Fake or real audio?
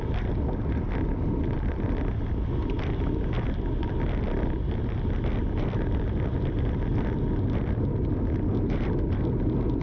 real